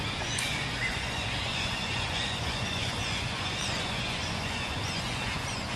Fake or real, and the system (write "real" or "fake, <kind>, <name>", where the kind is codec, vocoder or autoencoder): fake, vocoder, Vocos